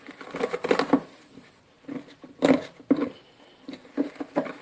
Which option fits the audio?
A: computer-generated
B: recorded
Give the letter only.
B